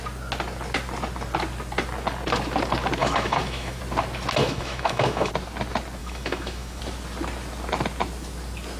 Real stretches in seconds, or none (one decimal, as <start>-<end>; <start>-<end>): 0.0-3.0; 3.8-4.4; 5.3-6.0; 6.8-8.8